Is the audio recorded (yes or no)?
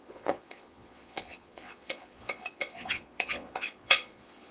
no